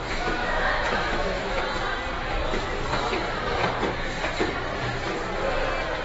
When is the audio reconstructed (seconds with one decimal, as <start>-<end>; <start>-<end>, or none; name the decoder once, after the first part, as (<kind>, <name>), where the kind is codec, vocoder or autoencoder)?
0.4-1.6 (autoencoder, DAC-VAE)